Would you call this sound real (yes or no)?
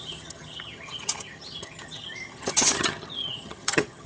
no